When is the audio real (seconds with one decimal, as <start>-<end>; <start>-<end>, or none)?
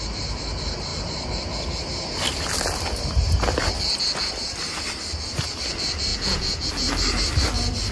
0.0-6.1; 6.7-7.9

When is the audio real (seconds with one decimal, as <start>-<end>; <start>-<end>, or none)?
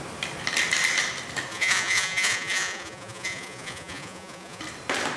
0.0-1.5; 4.6-5.2